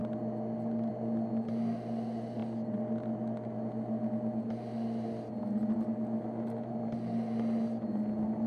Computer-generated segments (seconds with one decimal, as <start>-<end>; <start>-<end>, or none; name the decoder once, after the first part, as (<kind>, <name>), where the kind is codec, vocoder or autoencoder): none